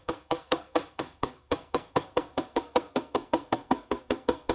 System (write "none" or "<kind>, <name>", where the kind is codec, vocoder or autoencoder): codec, SNAC